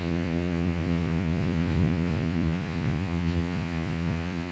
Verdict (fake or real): fake